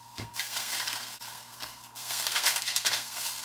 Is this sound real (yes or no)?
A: no